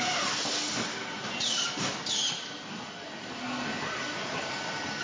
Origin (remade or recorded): recorded